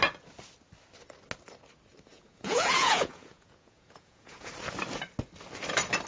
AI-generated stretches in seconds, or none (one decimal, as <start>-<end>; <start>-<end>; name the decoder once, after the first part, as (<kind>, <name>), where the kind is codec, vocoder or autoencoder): 2.1-4.5 (vocoder, Vocos)